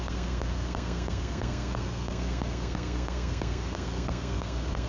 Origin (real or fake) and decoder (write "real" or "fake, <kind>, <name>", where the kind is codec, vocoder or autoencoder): fake, codec, SNAC